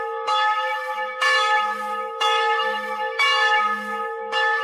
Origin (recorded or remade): remade